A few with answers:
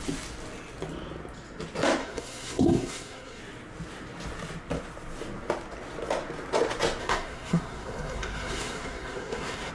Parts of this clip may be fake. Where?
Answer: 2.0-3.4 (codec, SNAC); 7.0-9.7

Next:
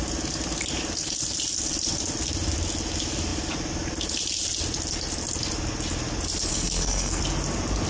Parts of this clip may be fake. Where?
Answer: 6.5-7.2 (codec, SNAC)

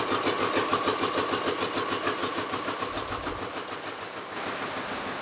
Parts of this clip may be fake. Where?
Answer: 2.2-2.8 (vocoder, BigVGAN v2)

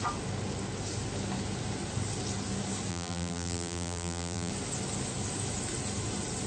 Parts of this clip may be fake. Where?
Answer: 2.9-4.5 (vocoder, BigVGAN v2)

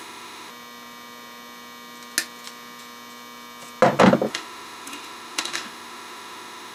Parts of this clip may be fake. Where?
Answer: 0.0-0.5 (autoencoder, DAC-VAE); 4.3-6.7